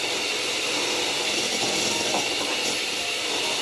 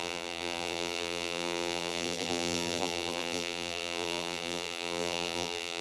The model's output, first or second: second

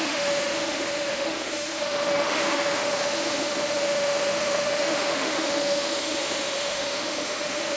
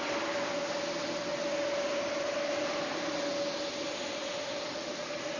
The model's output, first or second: first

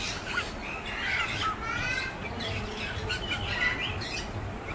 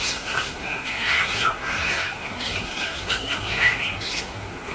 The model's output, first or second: second